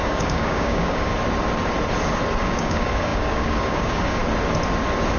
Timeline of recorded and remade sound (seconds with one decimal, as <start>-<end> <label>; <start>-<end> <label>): 0.0-1.1 remade; 1.1-2.4 recorded; 2.4-4.2 remade; 4.2-5.2 recorded